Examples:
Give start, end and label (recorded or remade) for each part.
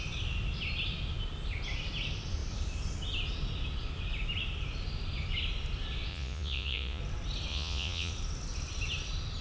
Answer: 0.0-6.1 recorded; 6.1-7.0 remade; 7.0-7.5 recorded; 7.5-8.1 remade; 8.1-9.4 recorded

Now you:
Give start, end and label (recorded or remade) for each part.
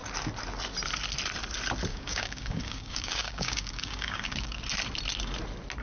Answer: 0.0-1.9 recorded; 1.9-4.6 remade; 4.6-5.8 recorded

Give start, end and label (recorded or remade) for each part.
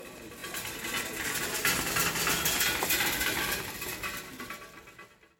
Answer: 0.0-5.4 recorded